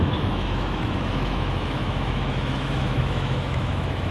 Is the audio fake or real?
fake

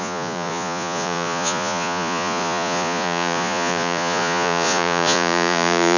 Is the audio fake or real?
fake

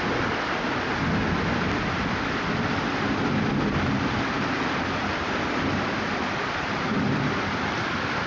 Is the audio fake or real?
real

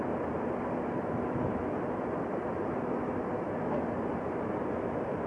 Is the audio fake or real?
real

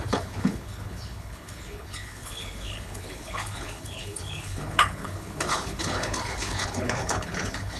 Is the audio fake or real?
fake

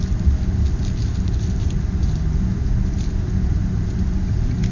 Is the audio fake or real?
real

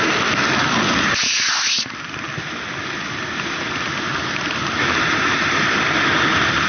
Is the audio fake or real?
real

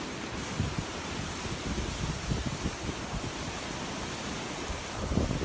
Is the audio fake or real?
real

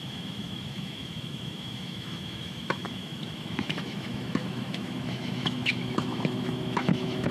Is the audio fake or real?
fake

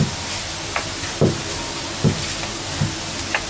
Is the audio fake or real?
real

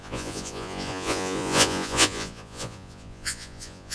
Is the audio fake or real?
fake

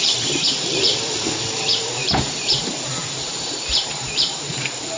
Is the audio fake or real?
fake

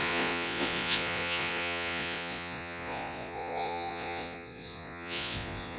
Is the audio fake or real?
fake